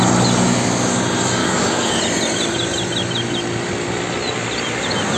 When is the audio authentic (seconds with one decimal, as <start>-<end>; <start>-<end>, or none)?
0.0-1.4; 2.0-5.2